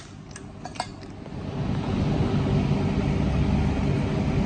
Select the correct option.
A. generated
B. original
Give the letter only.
B